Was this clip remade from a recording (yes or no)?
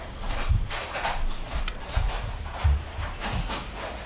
yes